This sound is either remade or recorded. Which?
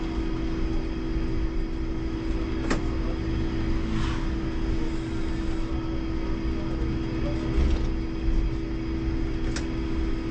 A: recorded